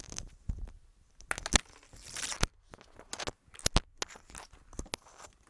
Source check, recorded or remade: recorded